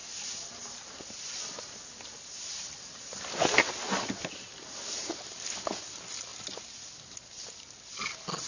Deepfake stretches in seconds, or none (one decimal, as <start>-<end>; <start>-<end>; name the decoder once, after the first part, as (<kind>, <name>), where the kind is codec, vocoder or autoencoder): none